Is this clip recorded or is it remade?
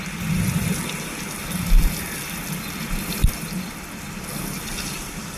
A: remade